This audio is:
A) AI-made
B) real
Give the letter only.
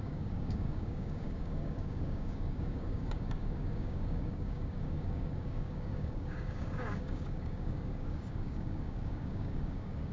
A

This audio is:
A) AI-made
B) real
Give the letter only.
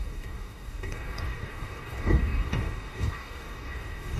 A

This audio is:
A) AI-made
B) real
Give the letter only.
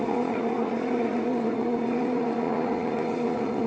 A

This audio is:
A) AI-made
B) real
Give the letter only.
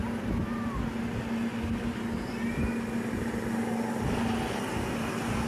B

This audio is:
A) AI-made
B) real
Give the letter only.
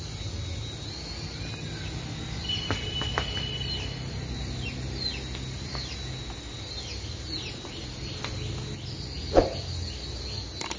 B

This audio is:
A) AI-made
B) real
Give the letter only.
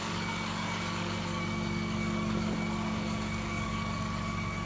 A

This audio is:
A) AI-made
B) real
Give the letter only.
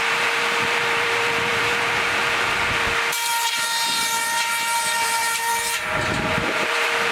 A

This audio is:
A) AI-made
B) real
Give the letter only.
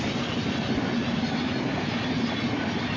B